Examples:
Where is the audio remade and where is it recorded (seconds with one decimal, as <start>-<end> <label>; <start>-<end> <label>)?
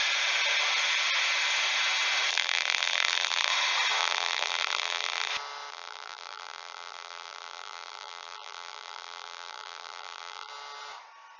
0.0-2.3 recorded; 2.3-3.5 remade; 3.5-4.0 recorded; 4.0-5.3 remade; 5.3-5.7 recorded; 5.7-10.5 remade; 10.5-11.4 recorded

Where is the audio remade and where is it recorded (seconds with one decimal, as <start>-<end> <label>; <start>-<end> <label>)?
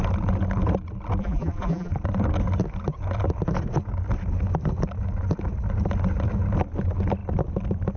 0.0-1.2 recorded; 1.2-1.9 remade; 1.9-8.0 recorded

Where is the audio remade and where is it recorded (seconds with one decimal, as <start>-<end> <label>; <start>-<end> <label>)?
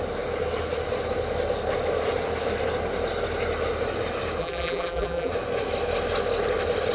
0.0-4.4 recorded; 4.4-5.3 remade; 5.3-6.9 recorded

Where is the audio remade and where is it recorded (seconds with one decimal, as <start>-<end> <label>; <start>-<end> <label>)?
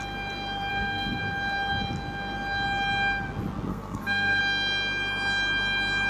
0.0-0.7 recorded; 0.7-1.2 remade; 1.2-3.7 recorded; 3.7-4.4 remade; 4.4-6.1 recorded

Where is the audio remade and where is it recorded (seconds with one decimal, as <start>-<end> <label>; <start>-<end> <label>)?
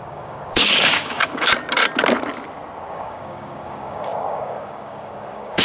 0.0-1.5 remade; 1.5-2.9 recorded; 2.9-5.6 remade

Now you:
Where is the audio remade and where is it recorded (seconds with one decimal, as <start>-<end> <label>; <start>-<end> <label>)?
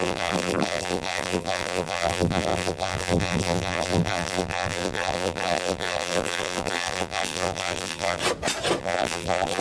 0.0-8.2 remade; 8.2-8.8 recorded; 8.8-9.6 remade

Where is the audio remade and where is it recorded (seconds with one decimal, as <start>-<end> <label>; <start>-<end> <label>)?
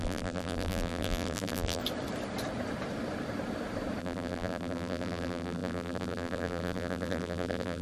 0.0-1.8 remade; 1.8-4.0 recorded; 4.0-7.8 remade